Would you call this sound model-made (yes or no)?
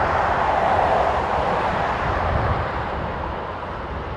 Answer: no